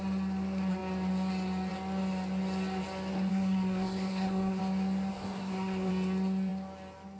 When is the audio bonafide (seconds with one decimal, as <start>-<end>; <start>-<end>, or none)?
0.0-3.3; 4.6-5.1; 5.9-7.2